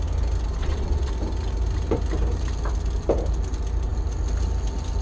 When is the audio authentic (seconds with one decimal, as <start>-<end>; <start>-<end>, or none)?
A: 0.0-0.6; 1.1-5.0